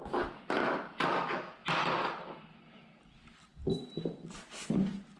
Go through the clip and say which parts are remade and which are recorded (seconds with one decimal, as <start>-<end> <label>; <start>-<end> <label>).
0.0-1.6 recorded; 1.6-2.5 remade; 2.5-5.2 recorded